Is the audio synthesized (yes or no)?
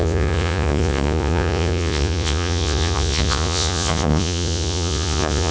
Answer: yes